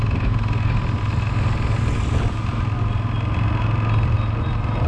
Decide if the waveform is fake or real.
real